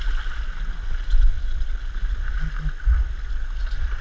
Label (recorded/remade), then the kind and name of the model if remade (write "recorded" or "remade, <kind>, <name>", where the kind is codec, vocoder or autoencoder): recorded